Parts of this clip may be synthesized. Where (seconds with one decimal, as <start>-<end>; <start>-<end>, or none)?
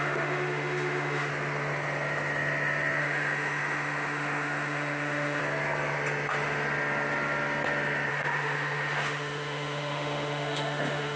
0.0-1.3; 3.0-5.4; 8.1-11.2